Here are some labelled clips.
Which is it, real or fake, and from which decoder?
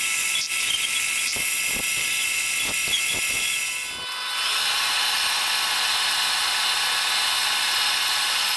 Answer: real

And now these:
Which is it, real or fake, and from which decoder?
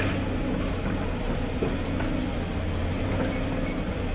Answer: real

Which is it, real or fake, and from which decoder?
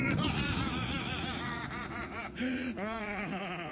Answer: fake, vocoder, Vocos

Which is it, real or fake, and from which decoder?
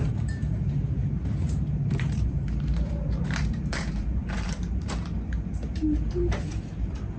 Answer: fake, vocoder, BigVGAN v2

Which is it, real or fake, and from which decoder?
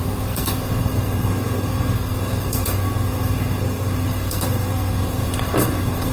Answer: fake, codec, SNAC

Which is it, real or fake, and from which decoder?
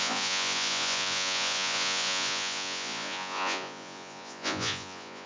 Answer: fake, vocoder, Vocos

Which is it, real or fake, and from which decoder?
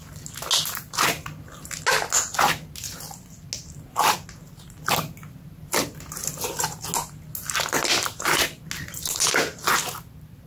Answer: real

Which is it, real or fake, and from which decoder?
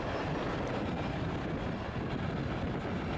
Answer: real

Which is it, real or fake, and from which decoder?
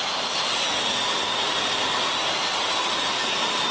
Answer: real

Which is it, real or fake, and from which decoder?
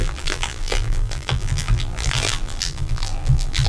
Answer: fake, vocoder, BigVGAN v2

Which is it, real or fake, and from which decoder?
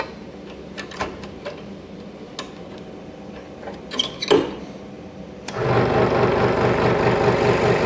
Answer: real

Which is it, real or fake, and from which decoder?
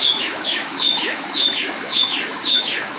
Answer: fake, autoencoder, DAC-VAE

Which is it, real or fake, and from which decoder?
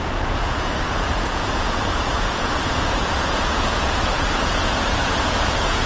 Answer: fake, vocoder, Vocos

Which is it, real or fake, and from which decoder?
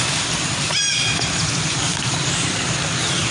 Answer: real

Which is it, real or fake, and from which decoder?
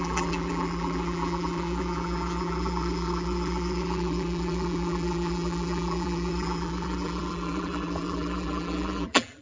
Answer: fake, vocoder, BigVGAN v2